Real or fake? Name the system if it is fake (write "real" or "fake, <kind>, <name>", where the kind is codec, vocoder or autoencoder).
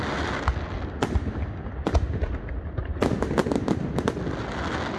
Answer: real